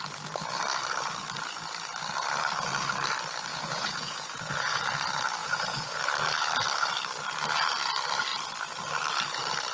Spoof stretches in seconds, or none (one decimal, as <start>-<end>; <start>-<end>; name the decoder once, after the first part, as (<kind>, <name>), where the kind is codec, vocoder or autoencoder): 3.5-4.8 (vocoder, Vocos); 5.4-6.0